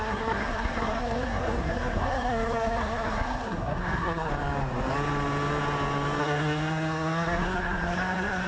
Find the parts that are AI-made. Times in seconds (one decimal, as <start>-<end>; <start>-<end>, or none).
0.0-4.3; 6.2-8.5